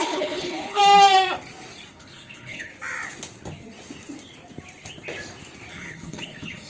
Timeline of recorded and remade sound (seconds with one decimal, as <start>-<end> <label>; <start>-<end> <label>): 0.0-0.8 remade; 0.8-1.9 recorded; 1.9-2.7 remade; 2.7-5.7 recorded; 5.7-6.7 remade